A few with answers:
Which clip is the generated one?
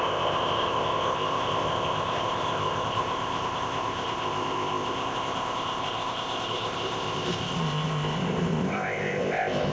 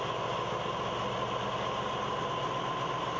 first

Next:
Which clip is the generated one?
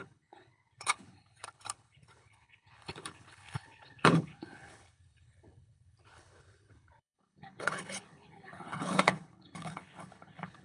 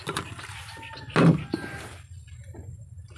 first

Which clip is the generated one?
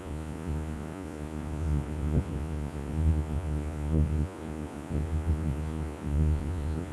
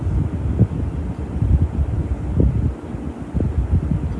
first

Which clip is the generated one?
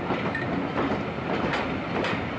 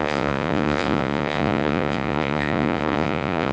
second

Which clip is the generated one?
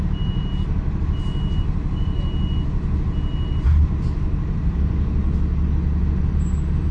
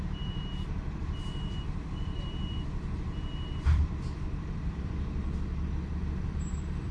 second